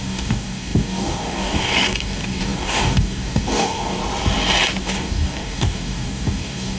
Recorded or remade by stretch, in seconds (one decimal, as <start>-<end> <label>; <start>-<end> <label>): 0.0-4.0 remade; 4.0-4.8 recorded; 4.8-6.8 remade